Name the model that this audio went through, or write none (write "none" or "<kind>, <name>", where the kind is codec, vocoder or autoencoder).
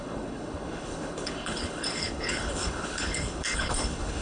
codec, HILCodec